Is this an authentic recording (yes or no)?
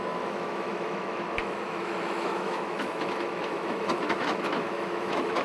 no